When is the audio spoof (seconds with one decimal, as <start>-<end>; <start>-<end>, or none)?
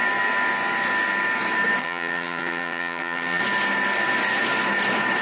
1.8-3.4